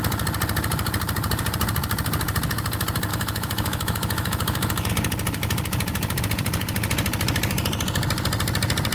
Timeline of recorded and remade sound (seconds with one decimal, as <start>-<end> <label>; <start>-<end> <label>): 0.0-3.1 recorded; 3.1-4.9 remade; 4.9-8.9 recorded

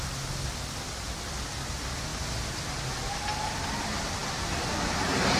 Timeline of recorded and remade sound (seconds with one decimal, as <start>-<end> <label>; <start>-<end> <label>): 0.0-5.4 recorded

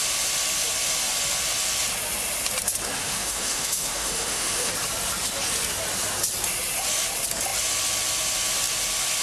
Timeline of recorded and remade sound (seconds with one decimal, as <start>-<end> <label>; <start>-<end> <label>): 0.0-3.0 recorded; 3.0-4.7 remade; 4.7-9.2 recorded